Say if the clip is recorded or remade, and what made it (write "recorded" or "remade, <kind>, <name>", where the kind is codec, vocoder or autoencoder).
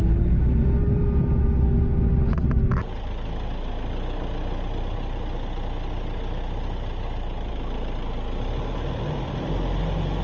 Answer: recorded